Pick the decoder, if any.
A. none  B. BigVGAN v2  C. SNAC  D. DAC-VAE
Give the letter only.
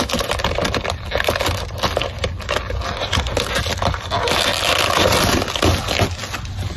A